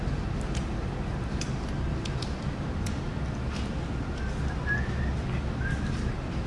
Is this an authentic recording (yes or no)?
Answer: yes